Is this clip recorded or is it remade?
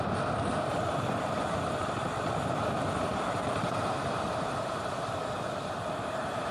recorded